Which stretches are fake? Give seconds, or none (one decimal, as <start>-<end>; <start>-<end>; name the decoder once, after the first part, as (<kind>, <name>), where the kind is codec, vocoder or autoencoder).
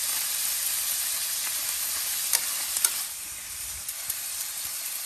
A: none